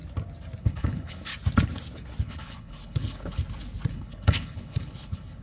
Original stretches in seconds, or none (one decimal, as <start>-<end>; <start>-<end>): 0.0-0.6; 1.3-2.2; 3.4-3.9